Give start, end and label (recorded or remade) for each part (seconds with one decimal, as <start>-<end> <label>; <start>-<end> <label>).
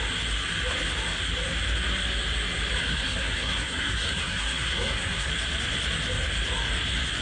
0.0-2.8 recorded; 2.8-5.3 remade; 5.3-7.2 recorded